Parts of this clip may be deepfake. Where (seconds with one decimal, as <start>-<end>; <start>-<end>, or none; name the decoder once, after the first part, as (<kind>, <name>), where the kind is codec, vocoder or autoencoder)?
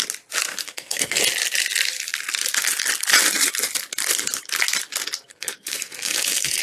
0.5-1.2 (codec, SNAC); 5.3-6.6